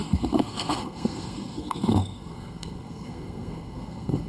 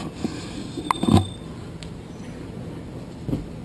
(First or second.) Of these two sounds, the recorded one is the second